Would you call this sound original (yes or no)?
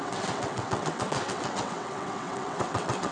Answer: no